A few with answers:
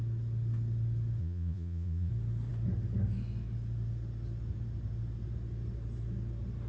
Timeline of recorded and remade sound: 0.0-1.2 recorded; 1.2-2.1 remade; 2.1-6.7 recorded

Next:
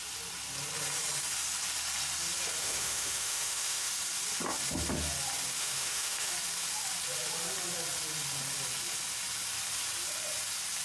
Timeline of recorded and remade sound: 0.0-2.6 recorded; 2.6-3.9 remade; 3.9-5.6 recorded; 5.6-6.3 remade; 6.3-10.8 recorded

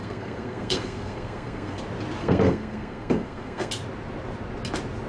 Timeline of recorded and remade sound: 0.0-1.8 remade; 1.8-2.2 recorded; 2.2-3.7 remade; 3.7-5.1 recorded

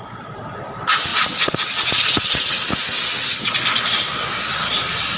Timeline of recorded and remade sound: 0.0-1.1 remade; 1.1-3.3 recorded; 3.3-5.2 remade

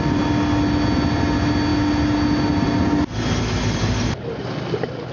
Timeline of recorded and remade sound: 0.0-5.1 recorded

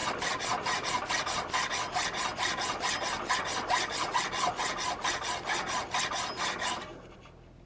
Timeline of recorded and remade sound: 0.0-7.7 recorded